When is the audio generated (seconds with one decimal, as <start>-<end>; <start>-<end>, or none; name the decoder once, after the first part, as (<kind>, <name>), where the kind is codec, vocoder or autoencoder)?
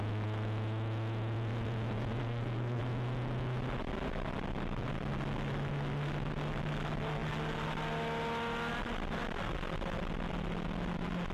2.2-2.8 (codec, SNAC)